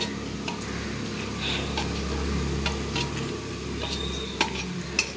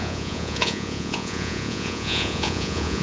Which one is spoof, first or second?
second